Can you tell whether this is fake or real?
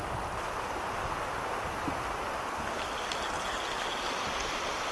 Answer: real